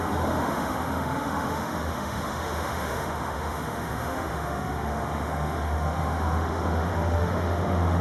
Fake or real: fake